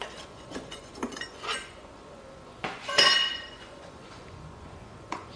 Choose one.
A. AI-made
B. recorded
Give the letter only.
A